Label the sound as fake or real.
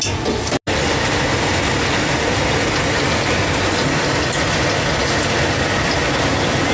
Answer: real